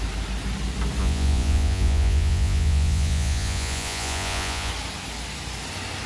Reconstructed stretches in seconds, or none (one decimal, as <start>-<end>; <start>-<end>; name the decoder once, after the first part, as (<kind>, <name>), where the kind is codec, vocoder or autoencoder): 1.0-4.7 (vocoder, Vocos)